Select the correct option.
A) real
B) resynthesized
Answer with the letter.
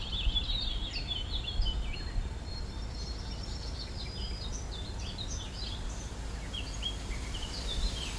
B